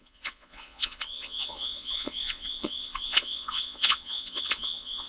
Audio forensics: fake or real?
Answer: fake